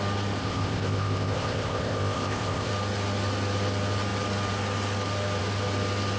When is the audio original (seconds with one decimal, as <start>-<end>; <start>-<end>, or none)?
0.0-0.4; 2.7-6.2